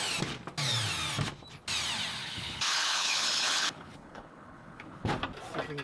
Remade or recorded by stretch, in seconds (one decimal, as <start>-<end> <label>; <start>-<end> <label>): 0.0-2.2 recorded; 2.2-5.1 remade; 5.1-5.8 recorded